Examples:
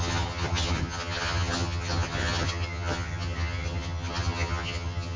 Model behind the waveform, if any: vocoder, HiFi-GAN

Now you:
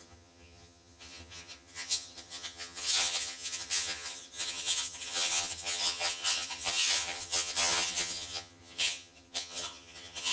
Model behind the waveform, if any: vocoder, HiFi-GAN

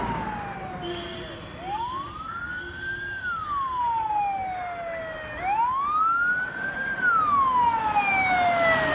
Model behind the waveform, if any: none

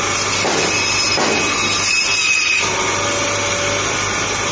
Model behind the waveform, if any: none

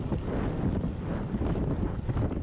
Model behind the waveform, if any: none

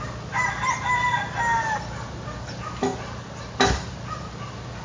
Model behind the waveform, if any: none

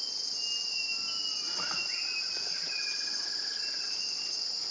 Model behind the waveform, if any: none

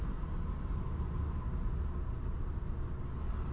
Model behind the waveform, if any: none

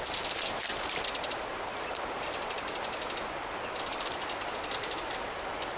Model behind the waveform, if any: none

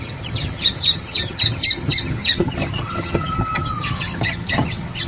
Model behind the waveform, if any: vocoder, HiFi-GAN